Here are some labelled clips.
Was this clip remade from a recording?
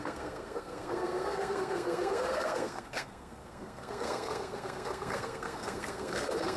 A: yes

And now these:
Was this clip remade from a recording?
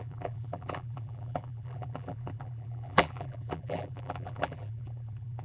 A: yes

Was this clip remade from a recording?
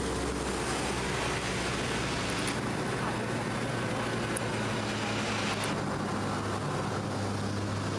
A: no